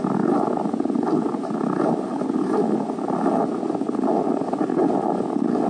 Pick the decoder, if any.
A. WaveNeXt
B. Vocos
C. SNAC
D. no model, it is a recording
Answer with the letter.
D